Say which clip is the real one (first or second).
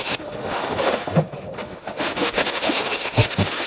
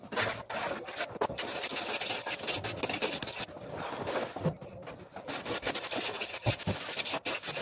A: second